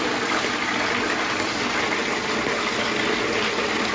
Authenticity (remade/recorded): recorded